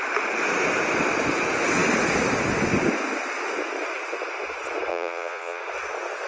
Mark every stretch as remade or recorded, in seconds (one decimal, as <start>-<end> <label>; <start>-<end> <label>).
0.0-4.9 recorded; 4.9-5.6 remade; 5.6-6.3 recorded